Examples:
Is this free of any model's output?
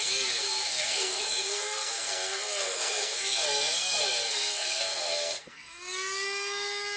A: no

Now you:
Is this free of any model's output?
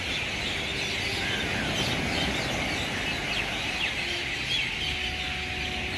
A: yes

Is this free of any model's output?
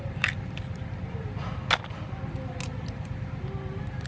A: yes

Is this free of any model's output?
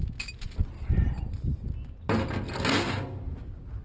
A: yes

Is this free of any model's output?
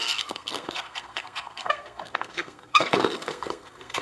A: no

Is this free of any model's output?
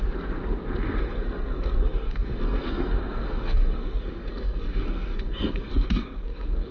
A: no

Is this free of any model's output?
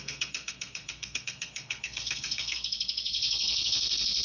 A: no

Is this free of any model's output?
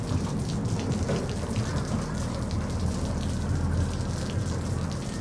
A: yes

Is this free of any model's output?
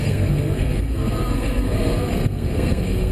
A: no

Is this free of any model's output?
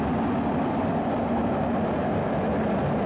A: yes